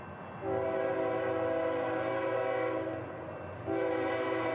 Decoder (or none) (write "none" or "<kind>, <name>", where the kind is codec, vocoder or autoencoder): none